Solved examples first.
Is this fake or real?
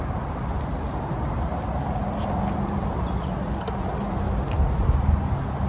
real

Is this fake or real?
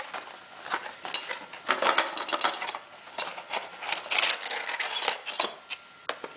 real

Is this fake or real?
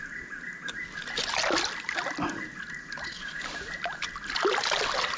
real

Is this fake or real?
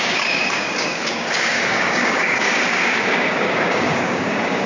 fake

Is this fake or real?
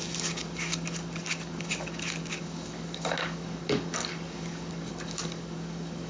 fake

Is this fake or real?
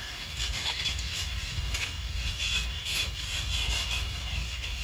fake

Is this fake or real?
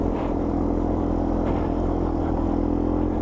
real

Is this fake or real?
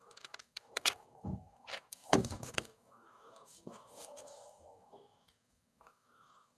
fake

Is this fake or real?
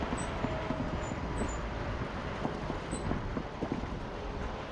real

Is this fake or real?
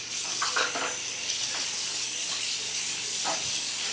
fake